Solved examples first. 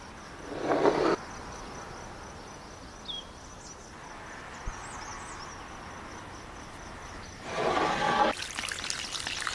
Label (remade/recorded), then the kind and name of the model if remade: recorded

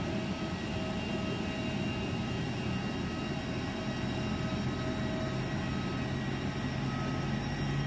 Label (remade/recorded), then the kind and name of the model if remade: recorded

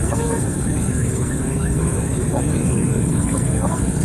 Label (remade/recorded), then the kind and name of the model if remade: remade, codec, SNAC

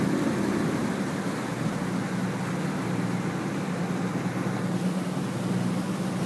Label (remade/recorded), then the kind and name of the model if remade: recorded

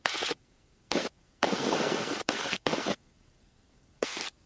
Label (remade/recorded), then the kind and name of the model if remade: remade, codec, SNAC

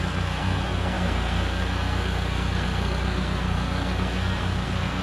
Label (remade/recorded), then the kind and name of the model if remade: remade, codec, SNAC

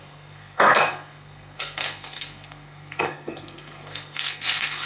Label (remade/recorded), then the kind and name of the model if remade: remade, codec, SNAC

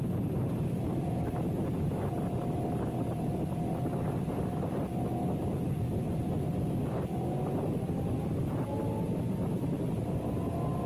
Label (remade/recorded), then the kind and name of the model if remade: recorded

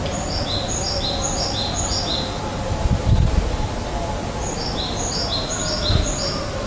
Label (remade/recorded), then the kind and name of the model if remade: recorded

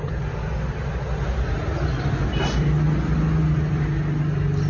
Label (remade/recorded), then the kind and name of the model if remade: recorded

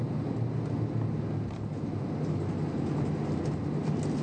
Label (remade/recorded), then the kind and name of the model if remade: recorded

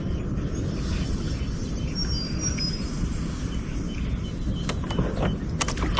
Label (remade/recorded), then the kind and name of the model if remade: recorded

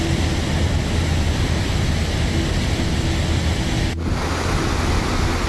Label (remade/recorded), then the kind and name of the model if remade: recorded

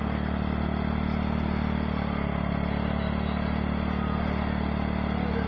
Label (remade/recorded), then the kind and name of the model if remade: recorded